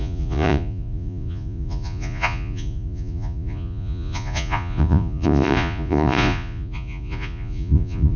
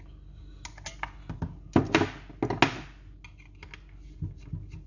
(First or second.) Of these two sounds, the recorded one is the second